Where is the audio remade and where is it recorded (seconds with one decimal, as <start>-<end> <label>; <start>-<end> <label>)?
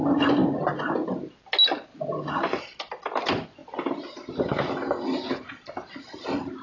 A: 0.0-6.6 recorded